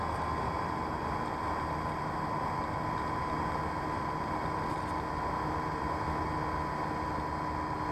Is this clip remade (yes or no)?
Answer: no